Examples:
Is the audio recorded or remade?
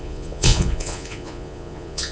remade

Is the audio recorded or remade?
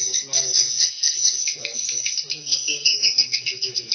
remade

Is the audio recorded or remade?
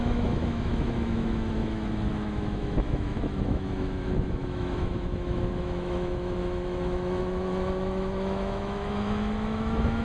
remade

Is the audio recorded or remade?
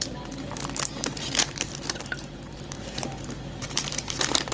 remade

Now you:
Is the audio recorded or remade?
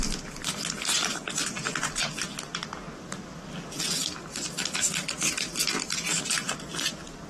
remade